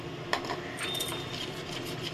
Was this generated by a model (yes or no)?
yes